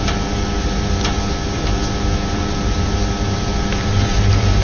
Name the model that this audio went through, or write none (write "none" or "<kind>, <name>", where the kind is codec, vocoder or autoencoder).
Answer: vocoder, BigVGAN v2